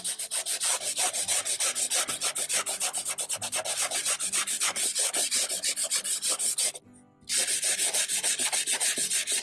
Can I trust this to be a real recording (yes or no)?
yes